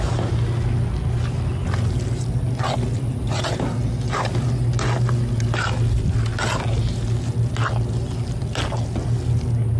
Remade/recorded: recorded